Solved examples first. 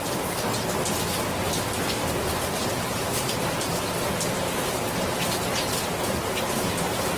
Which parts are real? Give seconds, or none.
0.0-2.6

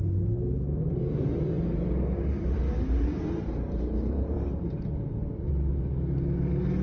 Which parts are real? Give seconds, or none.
0.0-1.2; 5.3-6.8

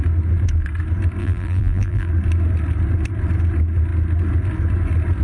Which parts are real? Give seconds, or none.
0.0-1.2; 2.1-5.2

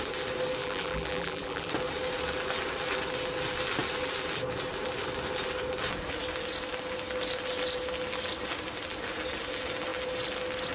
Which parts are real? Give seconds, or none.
0.0-0.6; 1.7-10.7

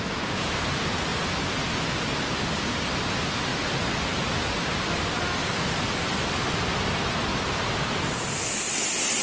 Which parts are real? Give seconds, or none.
0.0-5.4; 6.6-7.3; 8.1-9.2

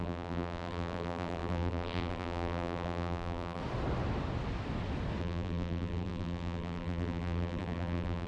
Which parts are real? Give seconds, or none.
3.6-5.2